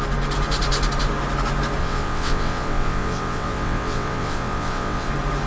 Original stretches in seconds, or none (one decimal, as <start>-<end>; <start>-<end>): 0.0-1.8; 5.1-5.5